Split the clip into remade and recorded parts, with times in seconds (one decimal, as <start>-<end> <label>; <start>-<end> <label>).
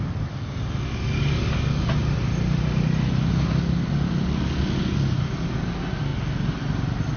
0.0-7.2 recorded